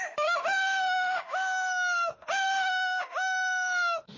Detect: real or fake fake